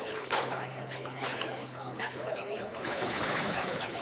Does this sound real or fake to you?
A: fake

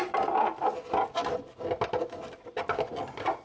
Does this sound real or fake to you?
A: real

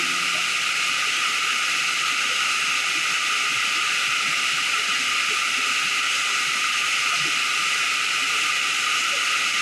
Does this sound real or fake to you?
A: real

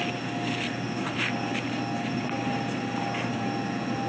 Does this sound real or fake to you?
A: real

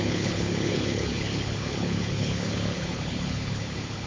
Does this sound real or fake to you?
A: fake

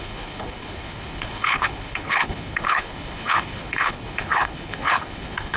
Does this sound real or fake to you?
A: fake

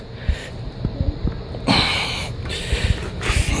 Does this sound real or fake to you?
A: real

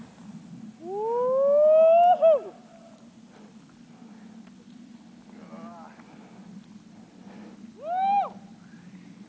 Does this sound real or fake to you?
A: real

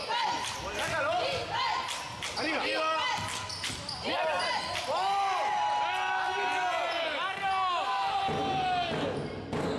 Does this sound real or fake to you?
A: real